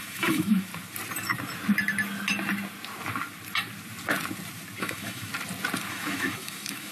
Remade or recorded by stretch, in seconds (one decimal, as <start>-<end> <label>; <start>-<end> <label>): 0.0-0.7 remade; 0.7-4.8 recorded; 4.8-5.3 remade; 5.3-5.9 recorded; 5.9-6.9 remade